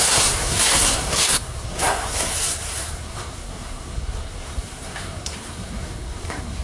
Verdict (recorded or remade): remade